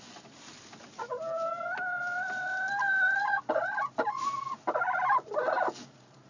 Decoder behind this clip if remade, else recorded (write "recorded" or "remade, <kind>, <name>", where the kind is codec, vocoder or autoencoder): recorded